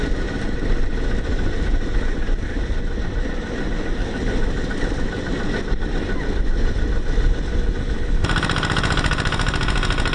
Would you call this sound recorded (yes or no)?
yes